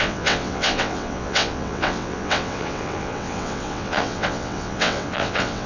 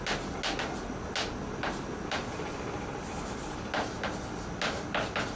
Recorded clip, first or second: second